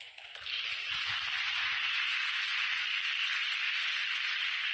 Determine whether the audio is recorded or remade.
recorded